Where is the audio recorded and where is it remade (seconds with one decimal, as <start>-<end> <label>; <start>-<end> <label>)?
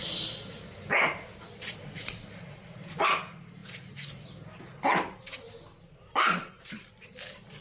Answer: 0.0-7.6 recorded